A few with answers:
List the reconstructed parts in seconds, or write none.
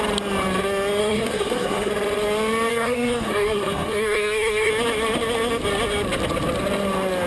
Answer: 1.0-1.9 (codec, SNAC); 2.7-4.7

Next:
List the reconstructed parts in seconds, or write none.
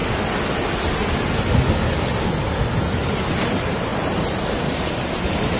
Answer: 3.4-5.6 (vocoder, BigVGAN v2)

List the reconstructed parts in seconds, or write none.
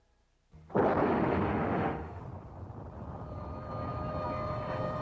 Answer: 1.0-2.2 (autoencoder, DAC-VAE)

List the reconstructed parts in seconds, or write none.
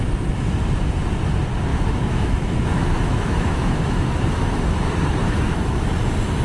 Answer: 1.7-4.6 (autoencoder, DAC-VAE); 5.2-5.9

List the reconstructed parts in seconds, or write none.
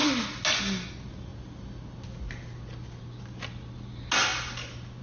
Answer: none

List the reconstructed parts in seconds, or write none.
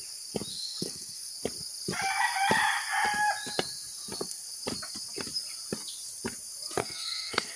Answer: 0.5-1.3 (codec, SNAC); 6.8-7.6